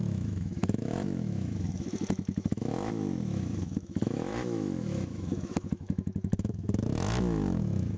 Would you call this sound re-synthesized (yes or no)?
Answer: yes